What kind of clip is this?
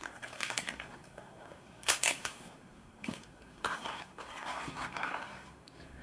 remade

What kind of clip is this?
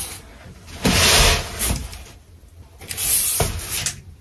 recorded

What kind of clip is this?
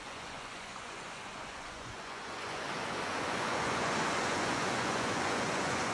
remade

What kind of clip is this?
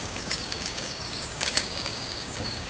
remade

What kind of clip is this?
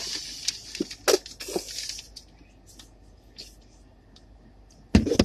recorded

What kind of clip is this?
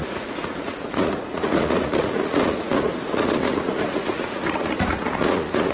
remade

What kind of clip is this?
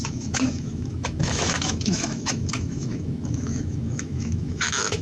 remade